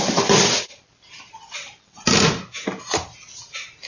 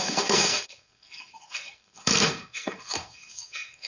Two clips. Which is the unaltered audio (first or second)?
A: first